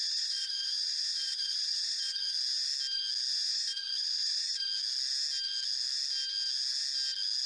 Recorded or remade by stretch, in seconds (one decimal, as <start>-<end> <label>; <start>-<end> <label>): 0.0-2.4 remade; 2.4-3.5 recorded; 3.5-4.6 remade; 4.6-7.5 recorded